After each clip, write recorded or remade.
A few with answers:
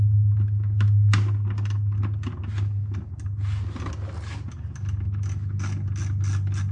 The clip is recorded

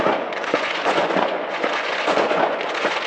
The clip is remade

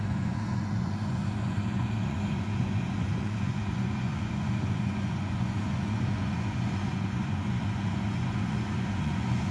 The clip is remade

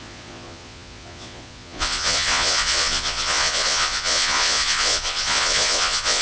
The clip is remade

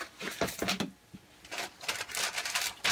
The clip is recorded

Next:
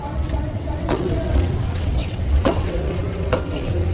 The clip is remade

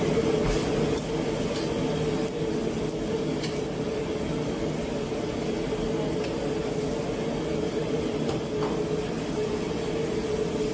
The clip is recorded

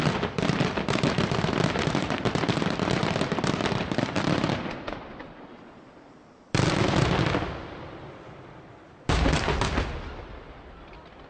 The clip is remade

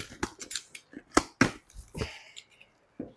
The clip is recorded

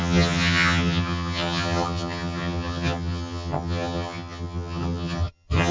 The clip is remade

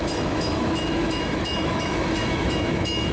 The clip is remade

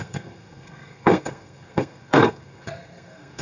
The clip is remade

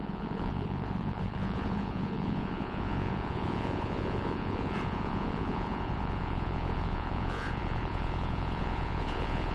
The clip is remade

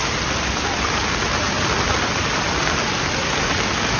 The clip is recorded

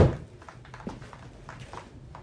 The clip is recorded